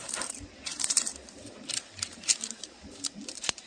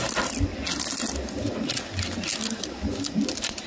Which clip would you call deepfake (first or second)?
first